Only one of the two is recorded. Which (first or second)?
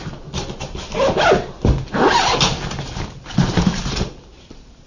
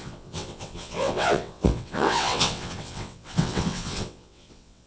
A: first